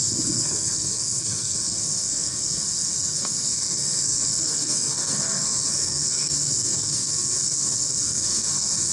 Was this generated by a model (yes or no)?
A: yes